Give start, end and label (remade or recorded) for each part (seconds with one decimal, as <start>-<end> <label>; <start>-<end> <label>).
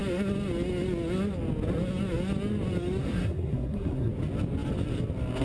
0.0-3.0 recorded; 3.0-4.1 remade; 4.1-5.4 recorded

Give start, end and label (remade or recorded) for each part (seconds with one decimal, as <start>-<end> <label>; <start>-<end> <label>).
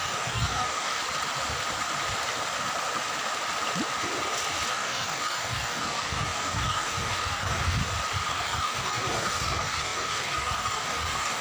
0.0-1.0 remade; 1.0-4.7 recorded; 4.7-7.8 remade; 7.8-8.3 recorded; 8.3-11.4 remade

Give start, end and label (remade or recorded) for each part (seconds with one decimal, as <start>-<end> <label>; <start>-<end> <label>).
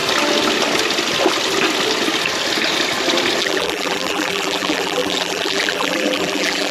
0.0-3.4 recorded; 3.4-6.7 remade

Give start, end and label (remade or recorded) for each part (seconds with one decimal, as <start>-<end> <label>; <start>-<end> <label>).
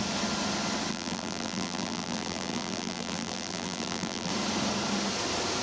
0.0-0.9 recorded; 0.9-4.3 remade; 4.3-5.6 recorded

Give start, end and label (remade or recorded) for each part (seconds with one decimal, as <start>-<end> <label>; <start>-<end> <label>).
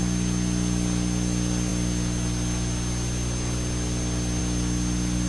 0.0-5.3 recorded